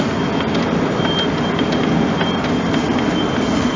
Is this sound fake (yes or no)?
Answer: no